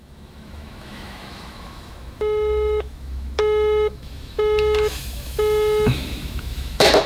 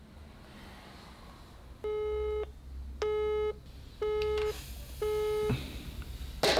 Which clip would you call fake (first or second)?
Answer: first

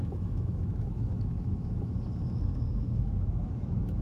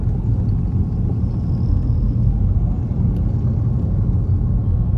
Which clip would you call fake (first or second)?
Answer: first